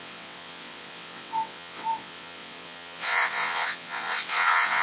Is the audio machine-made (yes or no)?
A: yes